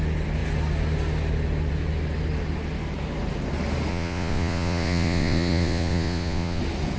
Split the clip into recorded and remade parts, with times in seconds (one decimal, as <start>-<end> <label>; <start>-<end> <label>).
0.0-3.9 recorded; 3.9-6.6 remade; 6.6-7.0 recorded